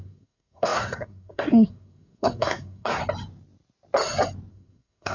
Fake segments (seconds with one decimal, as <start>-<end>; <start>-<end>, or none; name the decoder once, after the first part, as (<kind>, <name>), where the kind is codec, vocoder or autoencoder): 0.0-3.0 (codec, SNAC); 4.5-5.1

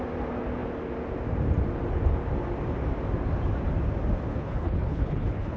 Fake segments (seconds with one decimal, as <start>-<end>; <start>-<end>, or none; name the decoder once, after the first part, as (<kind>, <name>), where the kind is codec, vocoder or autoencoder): 4.3-5.6 (codec, HILCodec)

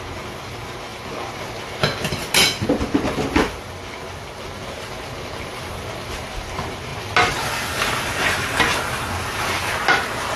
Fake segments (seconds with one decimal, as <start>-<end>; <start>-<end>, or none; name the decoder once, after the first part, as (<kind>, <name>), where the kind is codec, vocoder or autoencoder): none

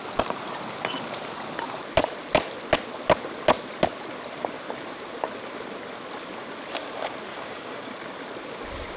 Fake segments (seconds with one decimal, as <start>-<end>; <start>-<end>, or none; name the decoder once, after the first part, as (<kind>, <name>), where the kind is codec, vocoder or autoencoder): 7.3-7.9 (codec, DAC)

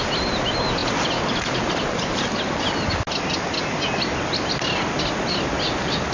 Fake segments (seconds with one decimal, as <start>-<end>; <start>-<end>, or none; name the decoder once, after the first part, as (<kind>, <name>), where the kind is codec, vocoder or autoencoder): none

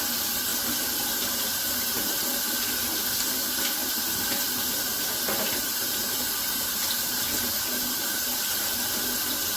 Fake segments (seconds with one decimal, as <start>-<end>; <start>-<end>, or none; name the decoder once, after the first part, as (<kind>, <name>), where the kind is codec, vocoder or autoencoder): 0.5-2.2 (vocoder, BigVGAN v2); 5.6-8.4